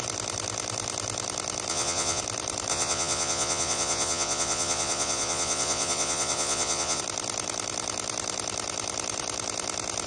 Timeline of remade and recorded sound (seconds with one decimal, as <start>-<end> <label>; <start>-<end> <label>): 0.0-1.7 recorded; 1.7-2.2 remade; 2.2-2.7 recorded; 2.7-7.0 remade; 7.0-10.1 recorded

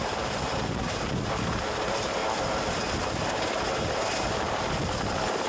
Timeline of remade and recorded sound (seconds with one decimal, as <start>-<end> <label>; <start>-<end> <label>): 0.0-0.8 remade; 0.8-1.4 recorded; 1.4-2.2 remade; 2.2-5.5 recorded

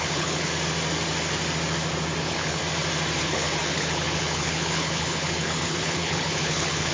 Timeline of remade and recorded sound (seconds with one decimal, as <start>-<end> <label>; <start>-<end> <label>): 0.0-0.5 remade; 0.5-2.2 recorded; 2.2-2.6 remade; 2.6-3.2 recorded; 3.2-6.9 remade

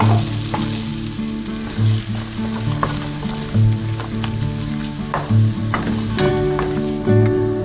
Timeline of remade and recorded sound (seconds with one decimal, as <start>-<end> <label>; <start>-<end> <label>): 0.0-7.6 recorded